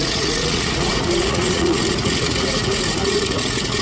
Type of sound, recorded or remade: remade